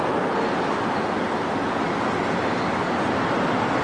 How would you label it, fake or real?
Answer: real